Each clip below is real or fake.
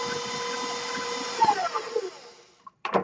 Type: real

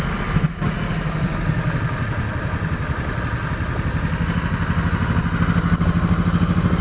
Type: real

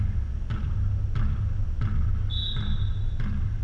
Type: real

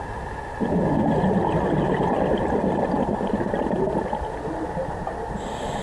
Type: real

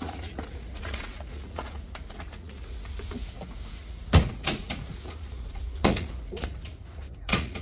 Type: fake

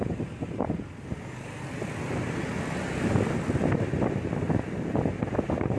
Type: real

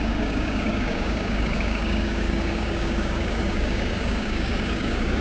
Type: fake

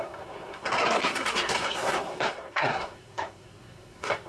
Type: fake